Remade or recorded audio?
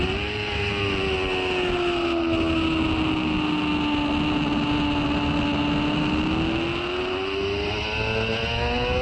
recorded